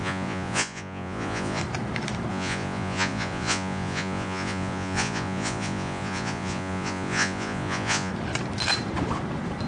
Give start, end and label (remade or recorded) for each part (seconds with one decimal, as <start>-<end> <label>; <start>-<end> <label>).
0.0-1.6 remade; 1.6-2.3 recorded; 2.3-8.1 remade; 8.1-9.7 recorded

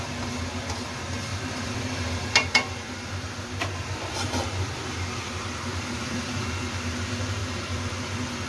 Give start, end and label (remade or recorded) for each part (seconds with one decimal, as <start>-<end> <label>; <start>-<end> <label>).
0.0-1.3 recorded; 1.3-6.4 remade; 6.4-7.4 recorded; 7.4-7.9 remade; 7.9-8.5 recorded

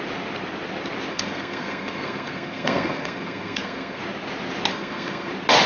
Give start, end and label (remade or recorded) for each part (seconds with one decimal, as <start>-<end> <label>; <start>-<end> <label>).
0.0-1.1 recorded; 1.1-4.0 remade; 4.0-4.7 recorded; 4.7-5.3 remade; 5.3-5.7 recorded

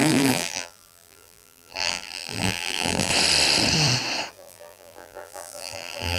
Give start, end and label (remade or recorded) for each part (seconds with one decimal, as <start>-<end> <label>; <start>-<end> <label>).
0.0-3.1 remade; 3.1-4.3 recorded; 4.3-6.2 remade

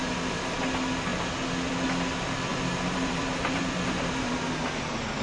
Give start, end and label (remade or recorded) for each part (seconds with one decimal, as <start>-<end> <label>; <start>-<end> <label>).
0.0-0.6 remade; 0.6-2.5 recorded; 2.5-4.3 remade; 4.3-5.2 recorded

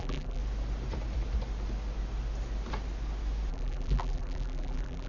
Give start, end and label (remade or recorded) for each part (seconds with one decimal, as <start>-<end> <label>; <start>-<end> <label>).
0.0-0.4 remade; 0.4-3.5 recorded; 3.5-5.1 remade

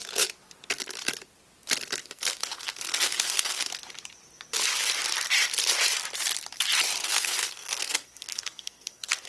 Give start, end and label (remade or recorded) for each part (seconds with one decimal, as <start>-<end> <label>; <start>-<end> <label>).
0.0-2.0 recorded; 2.0-3.6 remade; 3.6-7.0 recorded; 7.0-9.3 remade

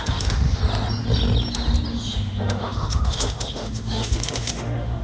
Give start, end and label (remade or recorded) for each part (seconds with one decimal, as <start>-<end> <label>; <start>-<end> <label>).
0.0-0.6 remade; 0.6-1.9 recorded; 1.9-5.0 remade